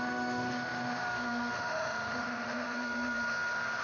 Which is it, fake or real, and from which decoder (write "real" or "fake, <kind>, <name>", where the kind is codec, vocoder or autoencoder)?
fake, autoencoder, DAC-VAE